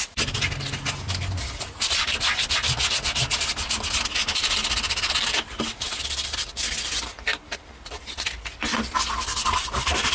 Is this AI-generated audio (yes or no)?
no